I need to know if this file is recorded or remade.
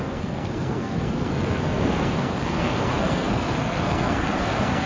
remade